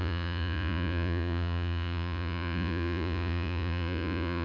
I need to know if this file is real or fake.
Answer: fake